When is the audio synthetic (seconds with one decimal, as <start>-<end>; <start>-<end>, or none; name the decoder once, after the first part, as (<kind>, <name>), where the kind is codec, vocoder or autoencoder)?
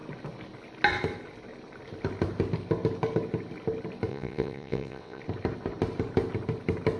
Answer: 4.1-5.2 (vocoder, WaveNeXt)